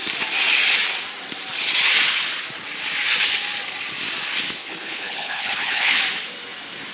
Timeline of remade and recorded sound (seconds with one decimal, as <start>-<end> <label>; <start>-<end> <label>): 0.0-4.6 recorded; 4.6-6.0 remade; 6.0-6.9 recorded